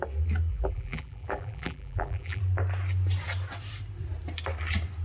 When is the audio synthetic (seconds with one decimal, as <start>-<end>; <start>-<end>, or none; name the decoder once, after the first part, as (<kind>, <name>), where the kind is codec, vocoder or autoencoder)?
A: 0.5-2.4 (vocoder, BigVGAN v2)